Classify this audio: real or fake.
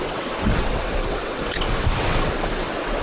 fake